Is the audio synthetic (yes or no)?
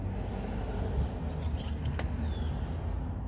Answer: no